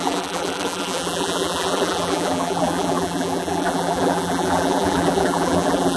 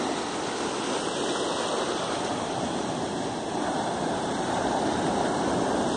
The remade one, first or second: first